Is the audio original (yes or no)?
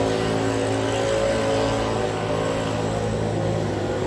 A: yes